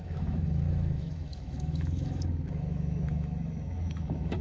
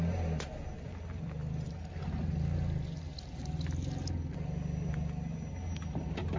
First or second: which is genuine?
second